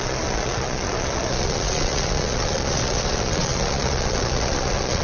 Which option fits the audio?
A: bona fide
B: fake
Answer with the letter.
B